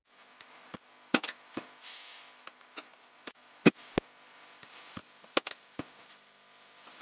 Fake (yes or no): no